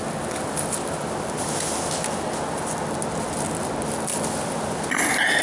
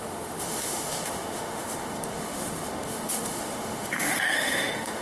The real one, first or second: first